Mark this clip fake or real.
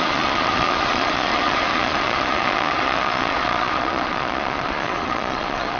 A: fake